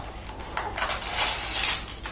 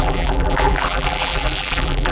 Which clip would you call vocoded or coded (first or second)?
second